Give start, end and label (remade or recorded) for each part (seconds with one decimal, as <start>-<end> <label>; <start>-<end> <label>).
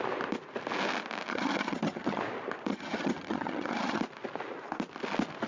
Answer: 0.0-1.3 recorded; 1.3-2.2 remade; 2.2-2.7 recorded; 2.7-4.0 remade; 4.0-5.5 recorded